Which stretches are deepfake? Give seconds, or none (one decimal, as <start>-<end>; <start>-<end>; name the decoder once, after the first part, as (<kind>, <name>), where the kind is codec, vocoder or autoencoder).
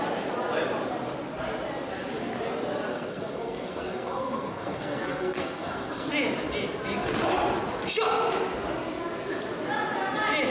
2.9-6.1 (codec, SNAC)